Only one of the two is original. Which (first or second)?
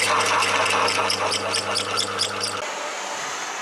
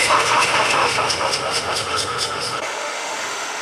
first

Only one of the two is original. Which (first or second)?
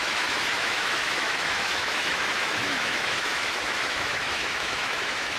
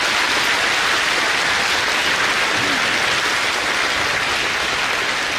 second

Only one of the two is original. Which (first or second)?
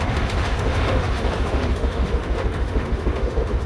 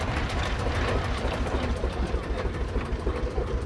second